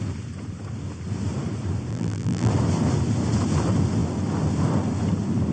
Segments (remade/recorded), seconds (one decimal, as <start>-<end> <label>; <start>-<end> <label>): 0.0-1.9 recorded; 1.9-2.5 remade; 2.5-5.5 recorded